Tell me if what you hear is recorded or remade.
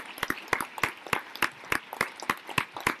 recorded